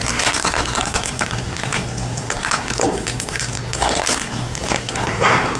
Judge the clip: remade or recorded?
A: remade